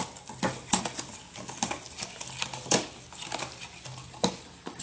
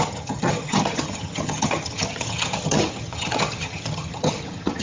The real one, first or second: first